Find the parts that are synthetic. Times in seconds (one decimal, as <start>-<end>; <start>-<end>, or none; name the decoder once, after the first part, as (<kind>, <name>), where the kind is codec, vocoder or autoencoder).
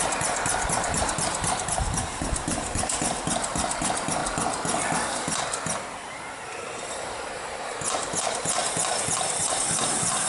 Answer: 0.0-4.2 (vocoder, BigVGAN v2); 6.9-8.6; 9.4-10.3